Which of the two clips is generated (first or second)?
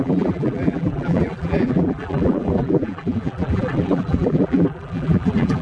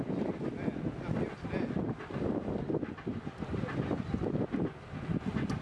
first